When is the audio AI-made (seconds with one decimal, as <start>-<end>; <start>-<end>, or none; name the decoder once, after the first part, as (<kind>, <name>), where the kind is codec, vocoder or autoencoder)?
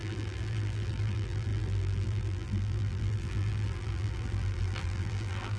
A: 0.0-5.6 (vocoder, BigVGAN v2)